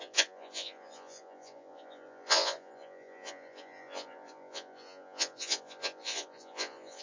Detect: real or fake fake